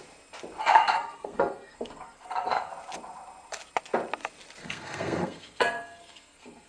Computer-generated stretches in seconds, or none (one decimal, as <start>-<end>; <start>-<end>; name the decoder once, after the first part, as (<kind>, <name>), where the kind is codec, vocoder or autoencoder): 0.6-2.7 (codec, SNAC); 4.6-6.7